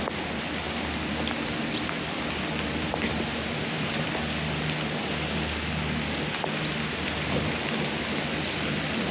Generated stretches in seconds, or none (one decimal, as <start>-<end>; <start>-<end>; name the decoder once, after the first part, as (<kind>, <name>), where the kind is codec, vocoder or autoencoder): 3.1-4.1 (vocoder, BigVGAN v2)